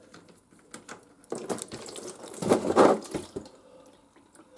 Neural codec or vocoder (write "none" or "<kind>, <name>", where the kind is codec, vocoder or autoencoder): none